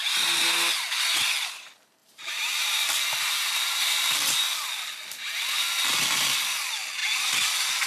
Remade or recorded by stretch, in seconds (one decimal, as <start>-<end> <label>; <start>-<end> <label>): 0.0-2.0 recorded; 2.0-4.4 remade; 4.4-7.9 recorded

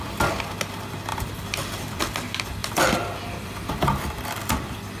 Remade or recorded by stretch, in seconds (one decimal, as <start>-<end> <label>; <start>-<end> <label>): 0.0-1.1 recorded; 1.1-2.0 remade; 2.0-2.6 recorded; 2.6-4.2 remade; 4.2-5.0 recorded

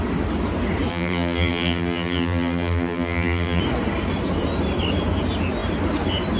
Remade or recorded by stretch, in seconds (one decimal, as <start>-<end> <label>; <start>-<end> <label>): 0.0-0.9 recorded; 0.9-3.6 remade; 3.6-6.4 recorded

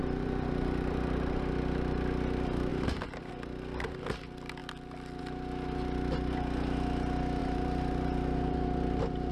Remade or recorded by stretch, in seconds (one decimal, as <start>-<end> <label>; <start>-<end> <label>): 0.0-1.4 remade; 1.4-2.7 recorded; 2.7-3.3 remade; 3.3-7.4 recorded; 7.4-9.3 remade

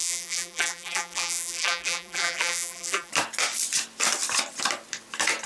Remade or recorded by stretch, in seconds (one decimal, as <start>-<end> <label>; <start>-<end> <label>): 0.0-3.1 remade; 3.1-5.5 recorded

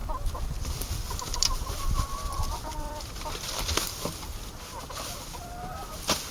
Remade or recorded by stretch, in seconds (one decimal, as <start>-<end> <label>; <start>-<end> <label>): 0.0-3.8 remade; 3.8-6.3 recorded

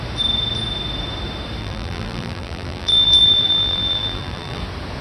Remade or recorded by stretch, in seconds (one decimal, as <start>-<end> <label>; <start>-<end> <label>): 0.0-1.6 recorded; 1.6-4.6 remade; 4.6-5.0 recorded

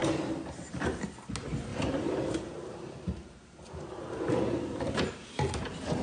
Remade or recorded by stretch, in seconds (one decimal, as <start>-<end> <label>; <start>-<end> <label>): 0.0-1.0 remade; 1.0-1.7 recorded; 1.7-5.3 remade; 5.3-6.0 recorded